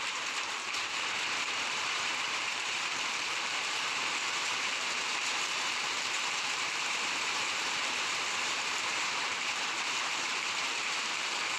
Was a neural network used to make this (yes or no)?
yes